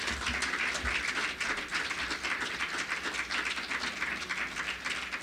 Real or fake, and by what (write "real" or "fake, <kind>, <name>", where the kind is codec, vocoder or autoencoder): real